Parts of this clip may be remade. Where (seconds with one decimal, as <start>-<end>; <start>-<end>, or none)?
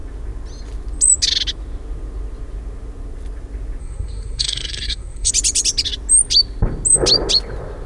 3.8-5.3